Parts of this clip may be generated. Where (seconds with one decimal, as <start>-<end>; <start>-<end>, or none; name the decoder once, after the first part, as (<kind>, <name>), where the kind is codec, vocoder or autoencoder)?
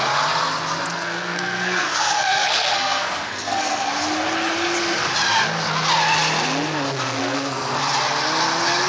0.9-3.9 (codec, SNAC); 7.2-7.8